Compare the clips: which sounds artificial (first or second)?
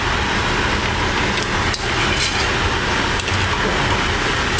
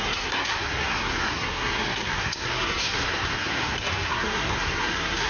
second